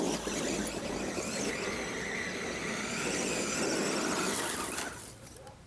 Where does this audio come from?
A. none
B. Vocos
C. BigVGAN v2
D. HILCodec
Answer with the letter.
A